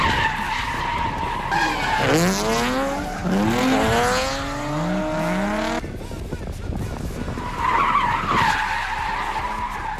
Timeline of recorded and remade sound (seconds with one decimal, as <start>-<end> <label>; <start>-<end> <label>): 0.0-10.0 recorded